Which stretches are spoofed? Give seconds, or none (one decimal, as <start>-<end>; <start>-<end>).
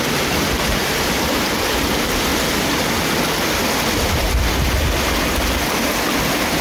0.0-2.3